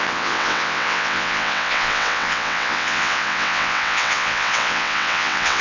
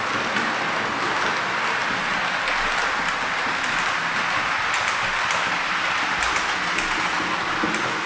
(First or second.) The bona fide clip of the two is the second